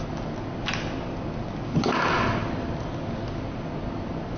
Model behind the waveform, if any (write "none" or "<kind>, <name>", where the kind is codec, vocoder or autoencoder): none